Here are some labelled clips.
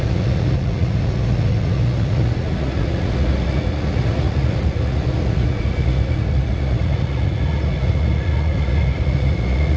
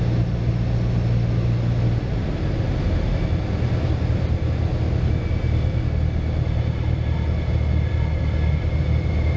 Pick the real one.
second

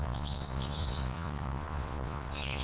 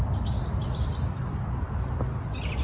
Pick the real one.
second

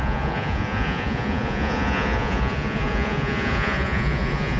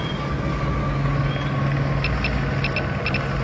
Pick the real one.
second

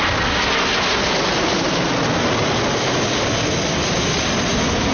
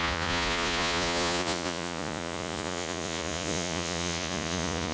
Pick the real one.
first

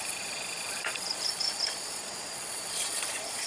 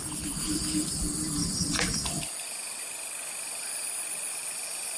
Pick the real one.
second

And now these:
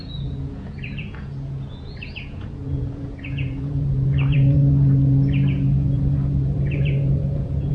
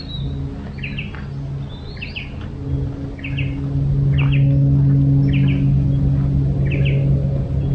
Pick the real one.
second